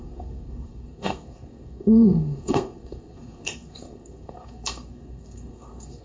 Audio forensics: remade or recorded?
remade